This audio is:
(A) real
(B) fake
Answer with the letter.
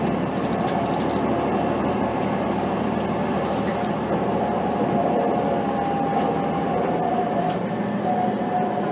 A